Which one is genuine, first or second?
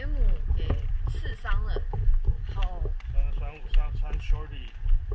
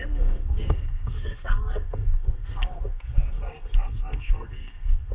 first